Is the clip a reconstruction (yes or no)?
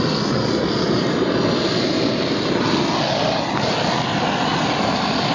no